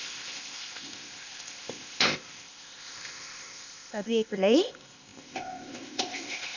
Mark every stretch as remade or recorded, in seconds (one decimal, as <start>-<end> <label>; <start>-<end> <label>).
0.0-6.6 remade